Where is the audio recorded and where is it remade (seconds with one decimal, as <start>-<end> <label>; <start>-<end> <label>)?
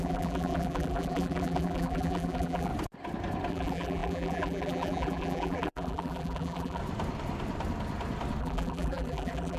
0.0-2.7 remade; 2.7-3.5 recorded; 3.5-6.8 remade; 6.8-8.4 recorded; 8.4-9.6 remade